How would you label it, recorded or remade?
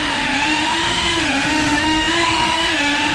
remade